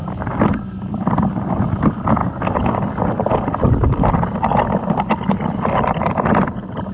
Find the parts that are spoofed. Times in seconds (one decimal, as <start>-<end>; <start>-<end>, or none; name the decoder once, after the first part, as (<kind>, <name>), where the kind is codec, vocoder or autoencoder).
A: 0.6-2.2 (vocoder, BigVGAN v2); 4.8-6.9